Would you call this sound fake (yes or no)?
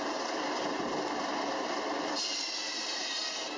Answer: no